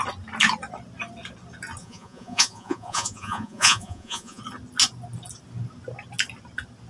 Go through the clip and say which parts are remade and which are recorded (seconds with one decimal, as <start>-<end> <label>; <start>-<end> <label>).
0.0-1.8 recorded; 1.8-4.4 remade; 4.4-6.9 recorded